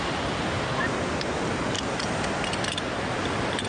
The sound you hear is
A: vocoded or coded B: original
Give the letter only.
B